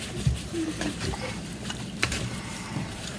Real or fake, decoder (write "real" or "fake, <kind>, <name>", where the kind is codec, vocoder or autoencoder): fake, vocoder, BigVGAN v2